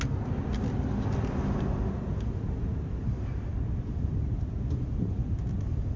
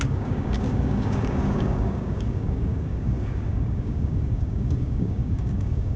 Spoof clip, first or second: second